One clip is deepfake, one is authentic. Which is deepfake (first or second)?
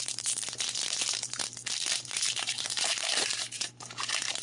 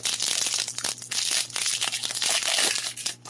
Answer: first